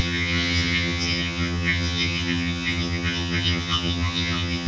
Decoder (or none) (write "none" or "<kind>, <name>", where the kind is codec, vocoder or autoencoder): vocoder, HiFi-GAN